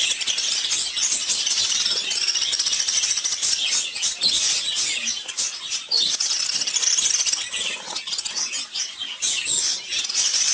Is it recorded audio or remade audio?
recorded